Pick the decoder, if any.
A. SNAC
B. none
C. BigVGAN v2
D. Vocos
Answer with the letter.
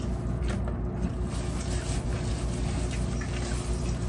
B